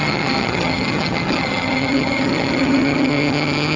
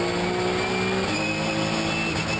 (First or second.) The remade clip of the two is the first